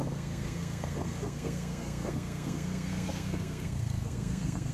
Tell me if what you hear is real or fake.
fake